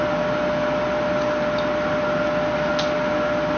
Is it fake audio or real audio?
real